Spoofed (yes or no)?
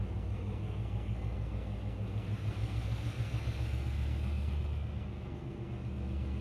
yes